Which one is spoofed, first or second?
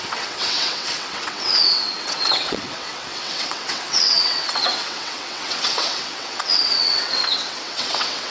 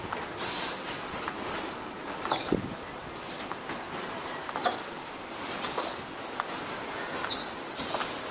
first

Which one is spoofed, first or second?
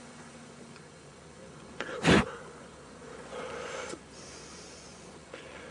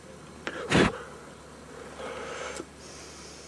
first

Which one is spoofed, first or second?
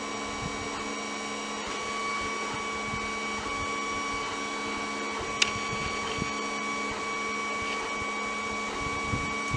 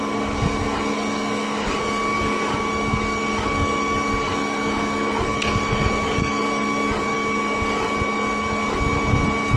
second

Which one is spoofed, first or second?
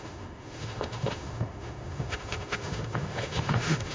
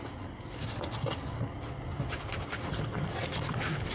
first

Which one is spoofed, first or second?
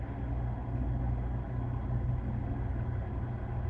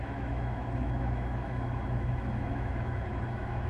second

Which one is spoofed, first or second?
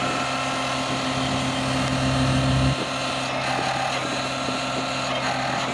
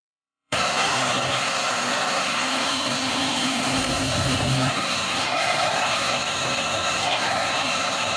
second